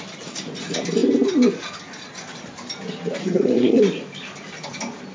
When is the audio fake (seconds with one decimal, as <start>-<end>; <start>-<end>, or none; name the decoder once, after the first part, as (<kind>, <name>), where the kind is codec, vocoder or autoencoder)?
3.2-3.8 (codec, SNAC)